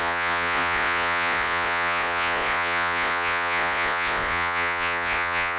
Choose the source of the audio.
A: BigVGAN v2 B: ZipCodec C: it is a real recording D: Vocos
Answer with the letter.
D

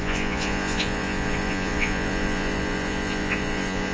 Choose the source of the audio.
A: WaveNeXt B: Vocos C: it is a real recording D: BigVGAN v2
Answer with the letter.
B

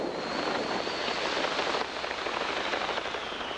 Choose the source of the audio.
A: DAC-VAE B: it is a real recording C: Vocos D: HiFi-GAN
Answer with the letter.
B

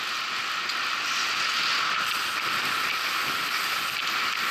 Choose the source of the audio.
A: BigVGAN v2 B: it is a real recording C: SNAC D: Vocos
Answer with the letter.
B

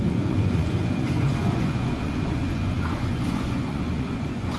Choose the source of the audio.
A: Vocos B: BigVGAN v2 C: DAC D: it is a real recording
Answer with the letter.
A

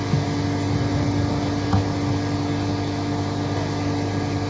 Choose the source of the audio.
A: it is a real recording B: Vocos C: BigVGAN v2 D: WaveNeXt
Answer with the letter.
A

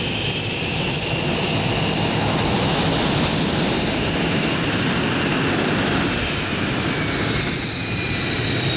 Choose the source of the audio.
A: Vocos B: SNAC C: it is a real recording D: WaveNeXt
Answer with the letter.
C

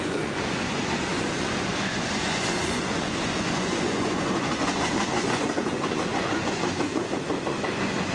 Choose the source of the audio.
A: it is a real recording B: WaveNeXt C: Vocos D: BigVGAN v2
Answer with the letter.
C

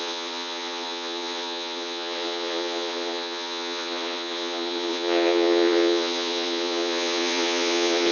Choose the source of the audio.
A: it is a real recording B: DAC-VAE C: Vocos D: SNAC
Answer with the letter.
C